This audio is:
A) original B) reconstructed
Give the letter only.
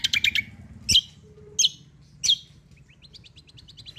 A